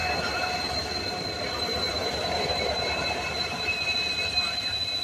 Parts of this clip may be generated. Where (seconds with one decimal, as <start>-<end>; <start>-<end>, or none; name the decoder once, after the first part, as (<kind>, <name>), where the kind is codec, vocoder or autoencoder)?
1.9-5.0 (vocoder, BigVGAN v2)